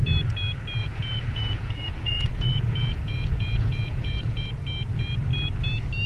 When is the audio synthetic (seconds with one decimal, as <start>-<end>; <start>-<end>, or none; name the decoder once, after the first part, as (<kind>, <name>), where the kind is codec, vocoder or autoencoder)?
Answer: 0.8-4.5 (vocoder, Vocos)